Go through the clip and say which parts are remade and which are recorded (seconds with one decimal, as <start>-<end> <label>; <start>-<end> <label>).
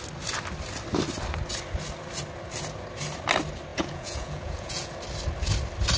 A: 0.0-3.7 recorded; 3.7-4.9 remade; 4.9-6.0 recorded